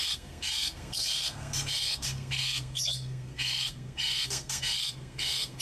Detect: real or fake fake